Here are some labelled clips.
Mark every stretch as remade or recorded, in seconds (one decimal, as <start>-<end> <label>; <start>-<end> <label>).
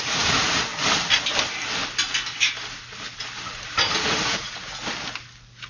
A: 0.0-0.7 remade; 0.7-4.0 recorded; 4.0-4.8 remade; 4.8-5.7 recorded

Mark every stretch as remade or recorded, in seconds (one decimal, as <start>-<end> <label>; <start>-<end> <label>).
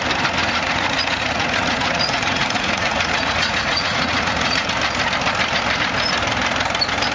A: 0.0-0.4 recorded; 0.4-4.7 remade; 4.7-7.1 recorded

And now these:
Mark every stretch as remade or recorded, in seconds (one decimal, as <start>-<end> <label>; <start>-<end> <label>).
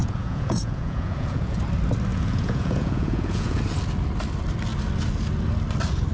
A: 0.0-1.6 remade; 1.6-2.1 recorded; 2.1-3.6 remade; 3.6-6.1 recorded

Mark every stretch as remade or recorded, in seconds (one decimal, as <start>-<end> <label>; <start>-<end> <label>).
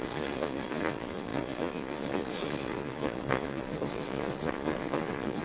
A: 0.0-5.4 remade